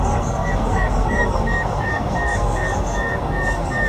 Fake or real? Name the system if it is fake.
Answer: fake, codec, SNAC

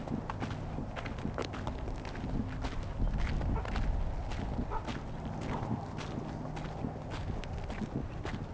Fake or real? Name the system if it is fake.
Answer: real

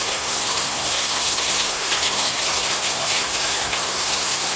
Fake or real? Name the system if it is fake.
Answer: fake, codec, SNAC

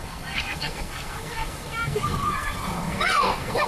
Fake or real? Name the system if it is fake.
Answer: fake, codec, SNAC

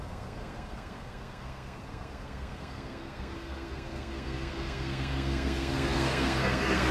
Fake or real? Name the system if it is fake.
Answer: fake, codec, SNAC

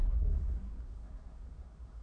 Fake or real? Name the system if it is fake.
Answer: fake, codec, SNAC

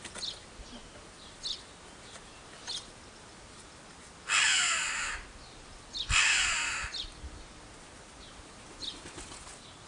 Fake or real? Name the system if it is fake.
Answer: real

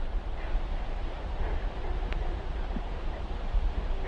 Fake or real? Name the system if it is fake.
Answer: real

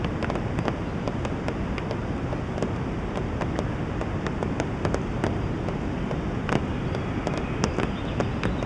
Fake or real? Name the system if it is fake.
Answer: real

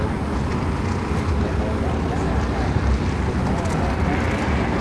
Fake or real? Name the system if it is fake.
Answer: real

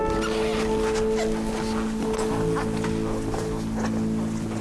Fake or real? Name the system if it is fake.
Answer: real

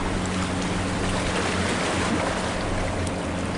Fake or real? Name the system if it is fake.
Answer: real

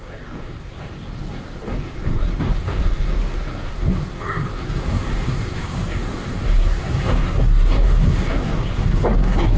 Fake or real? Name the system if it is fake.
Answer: fake, codec, SNAC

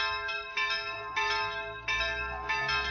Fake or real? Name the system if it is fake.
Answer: real